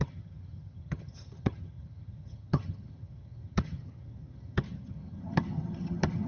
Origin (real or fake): fake